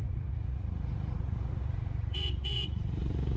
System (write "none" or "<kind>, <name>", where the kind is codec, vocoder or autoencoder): vocoder, Vocos